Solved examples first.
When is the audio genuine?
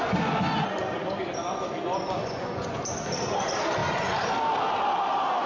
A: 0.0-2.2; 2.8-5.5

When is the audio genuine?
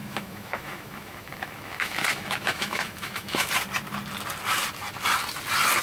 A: 3.5-5.8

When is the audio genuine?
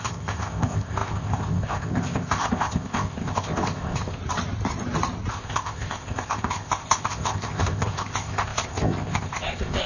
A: 4.2-5.3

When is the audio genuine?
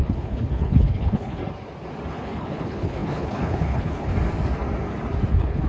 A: 1.4-2.1; 4.1-5.3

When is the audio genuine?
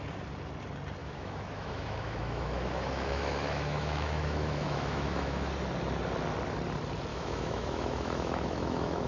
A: 0.0-1.0; 5.5-7.1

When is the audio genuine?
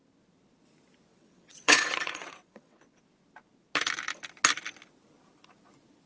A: 0.0-1.1; 3.0-6.1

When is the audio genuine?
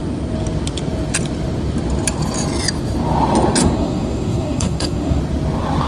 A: 0.0-3.6; 5.2-5.9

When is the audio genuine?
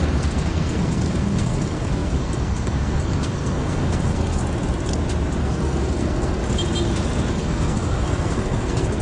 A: 4.4-5.4; 6.4-7.3